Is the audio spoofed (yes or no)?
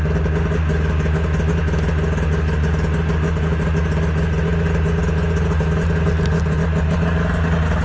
no